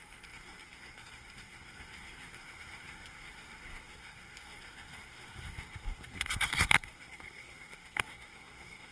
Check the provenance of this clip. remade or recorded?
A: remade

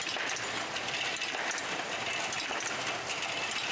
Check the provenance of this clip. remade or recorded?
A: recorded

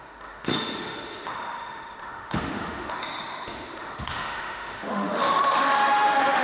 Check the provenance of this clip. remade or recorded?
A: remade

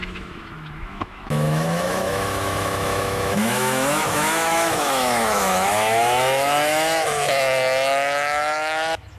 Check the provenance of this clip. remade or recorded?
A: remade